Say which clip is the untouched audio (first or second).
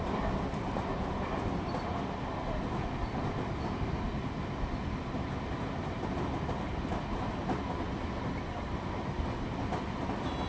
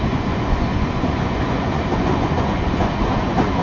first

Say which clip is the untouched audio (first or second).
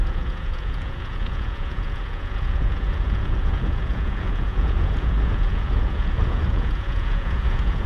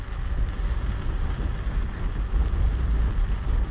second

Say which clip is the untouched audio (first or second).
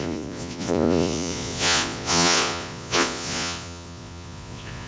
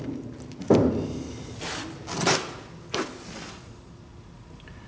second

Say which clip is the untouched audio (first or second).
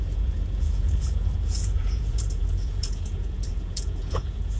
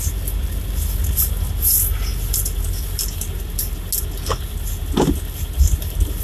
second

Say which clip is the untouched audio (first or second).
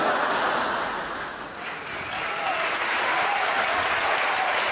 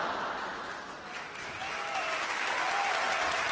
second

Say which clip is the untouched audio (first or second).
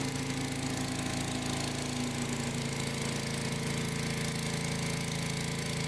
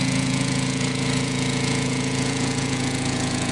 first